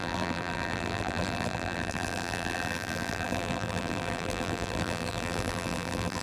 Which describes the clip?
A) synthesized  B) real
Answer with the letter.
A